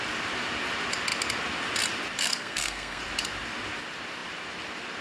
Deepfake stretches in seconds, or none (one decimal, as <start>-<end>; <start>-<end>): 2.3-3.0